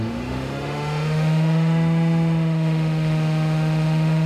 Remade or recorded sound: remade